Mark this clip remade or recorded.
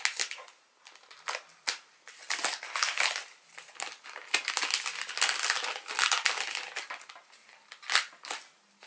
recorded